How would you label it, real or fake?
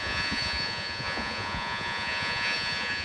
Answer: fake